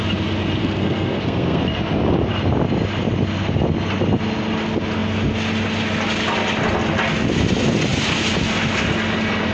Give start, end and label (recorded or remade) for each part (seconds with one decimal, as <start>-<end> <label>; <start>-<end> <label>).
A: 0.0-0.6 recorded; 0.6-1.6 remade; 1.6-9.5 recorded